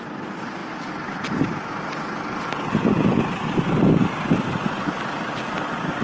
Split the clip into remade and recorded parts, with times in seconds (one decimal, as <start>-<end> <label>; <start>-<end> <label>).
0.0-6.0 recorded